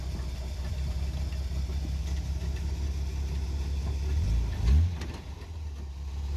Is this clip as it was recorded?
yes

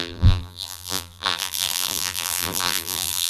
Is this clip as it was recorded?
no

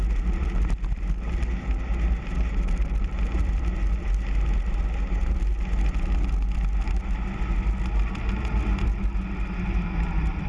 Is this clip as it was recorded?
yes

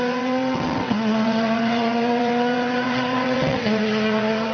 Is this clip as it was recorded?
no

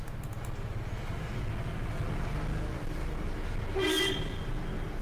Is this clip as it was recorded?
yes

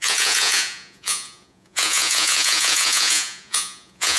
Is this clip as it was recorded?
no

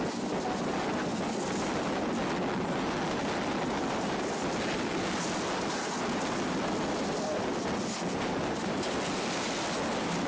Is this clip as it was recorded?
yes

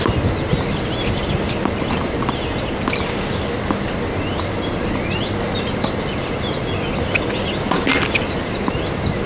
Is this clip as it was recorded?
yes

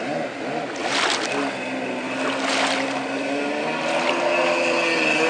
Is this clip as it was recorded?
yes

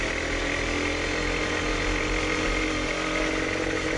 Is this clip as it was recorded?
yes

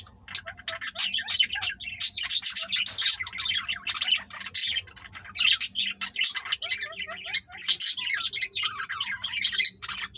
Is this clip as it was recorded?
yes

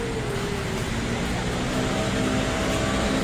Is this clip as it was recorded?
yes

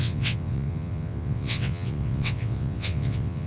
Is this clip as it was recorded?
no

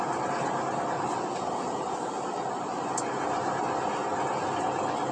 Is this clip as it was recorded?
yes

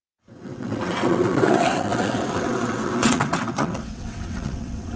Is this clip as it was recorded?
no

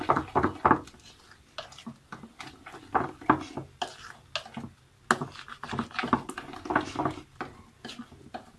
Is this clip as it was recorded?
yes